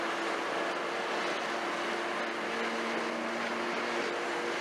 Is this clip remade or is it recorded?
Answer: recorded